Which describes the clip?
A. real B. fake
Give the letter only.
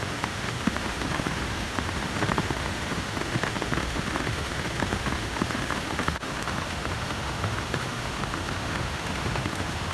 B